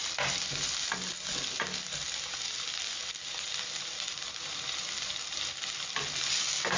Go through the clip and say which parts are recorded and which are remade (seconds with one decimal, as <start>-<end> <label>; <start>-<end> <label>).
0.0-6.8 recorded